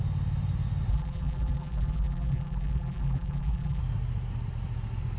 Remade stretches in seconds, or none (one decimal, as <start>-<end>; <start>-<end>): 0.9-3.8